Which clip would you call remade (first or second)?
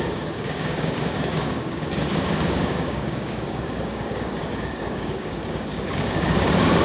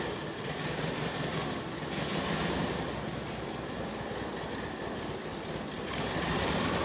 first